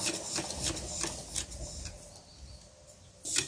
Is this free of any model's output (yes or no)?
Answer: yes